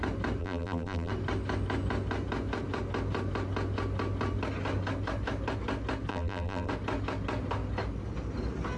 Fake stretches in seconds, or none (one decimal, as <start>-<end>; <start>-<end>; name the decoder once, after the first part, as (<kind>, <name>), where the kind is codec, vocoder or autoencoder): 0.4-1.1 (vocoder, BigVGAN v2); 6.1-6.7